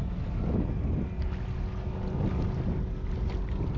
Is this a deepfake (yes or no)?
no